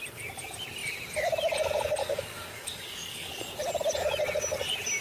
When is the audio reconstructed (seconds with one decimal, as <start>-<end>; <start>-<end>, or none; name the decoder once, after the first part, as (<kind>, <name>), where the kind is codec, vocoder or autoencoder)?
2.0-3.3 (codec, DAC)